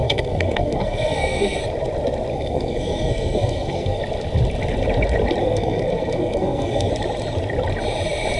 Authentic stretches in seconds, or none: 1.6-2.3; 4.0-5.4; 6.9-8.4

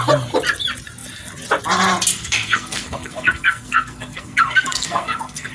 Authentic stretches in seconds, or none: 0.0-2.1

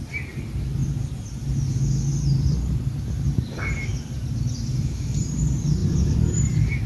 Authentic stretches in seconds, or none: 0.0-2.1; 3.1-3.9; 4.4-6.9

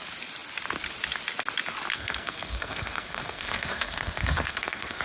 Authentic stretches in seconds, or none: 0.0-1.9

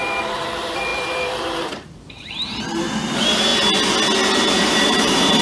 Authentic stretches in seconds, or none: 3.5-4.4

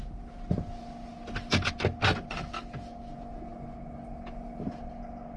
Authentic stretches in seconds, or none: 0.0-5.4